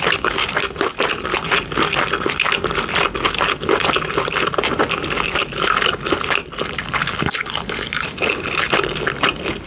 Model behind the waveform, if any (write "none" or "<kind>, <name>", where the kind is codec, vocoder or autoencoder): none